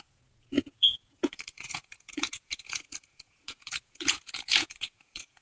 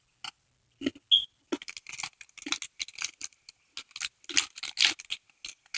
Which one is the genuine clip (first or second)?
second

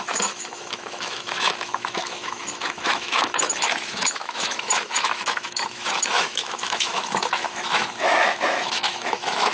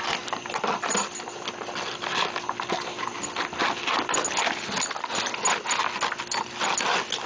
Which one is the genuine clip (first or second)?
second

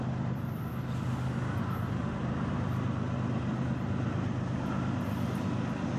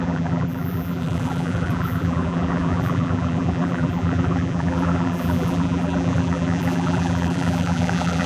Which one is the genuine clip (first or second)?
first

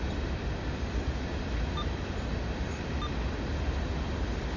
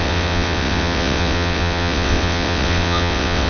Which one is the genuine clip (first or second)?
first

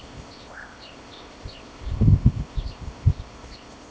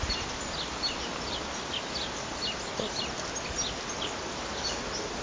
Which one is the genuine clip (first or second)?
second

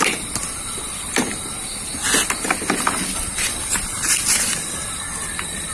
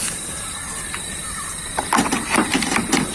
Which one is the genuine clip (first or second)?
second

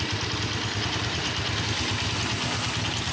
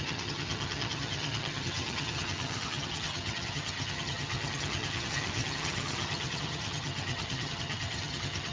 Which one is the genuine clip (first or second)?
first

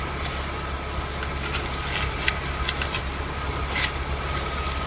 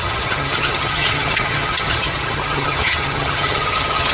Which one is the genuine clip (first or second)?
first